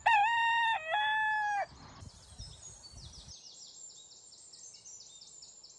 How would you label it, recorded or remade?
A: recorded